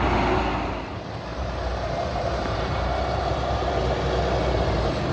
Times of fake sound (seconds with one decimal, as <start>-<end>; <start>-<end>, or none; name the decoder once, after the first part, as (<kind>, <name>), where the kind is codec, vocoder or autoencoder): 1.3-3.7 (vocoder, BigVGAN v2)